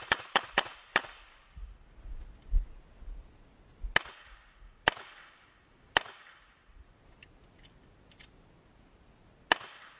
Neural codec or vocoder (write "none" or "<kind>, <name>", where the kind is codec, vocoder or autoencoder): none